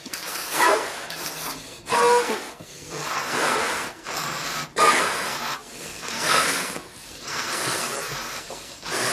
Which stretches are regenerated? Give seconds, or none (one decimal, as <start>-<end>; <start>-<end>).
0.0-9.1